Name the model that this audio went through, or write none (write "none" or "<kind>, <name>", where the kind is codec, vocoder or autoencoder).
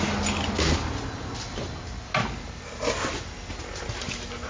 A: none